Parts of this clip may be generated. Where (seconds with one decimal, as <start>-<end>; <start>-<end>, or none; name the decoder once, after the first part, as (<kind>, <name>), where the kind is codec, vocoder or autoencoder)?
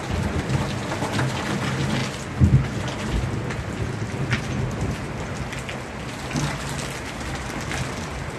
none